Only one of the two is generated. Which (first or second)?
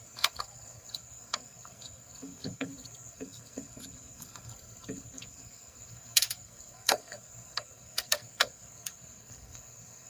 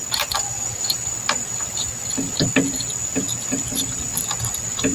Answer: first